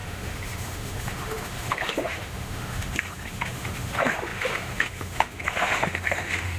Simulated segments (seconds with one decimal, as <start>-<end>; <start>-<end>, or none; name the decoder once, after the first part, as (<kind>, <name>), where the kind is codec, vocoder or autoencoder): 0.0-6.6 (autoencoder, DAC-VAE)